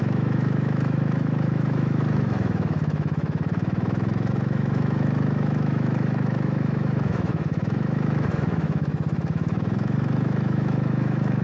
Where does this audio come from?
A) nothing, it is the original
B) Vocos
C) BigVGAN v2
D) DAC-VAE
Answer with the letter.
D